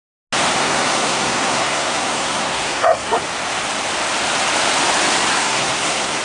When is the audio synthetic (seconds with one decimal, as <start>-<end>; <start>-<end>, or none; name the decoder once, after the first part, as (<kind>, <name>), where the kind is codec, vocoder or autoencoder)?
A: 0.6-3.2 (codec, SNAC); 5.3-6.2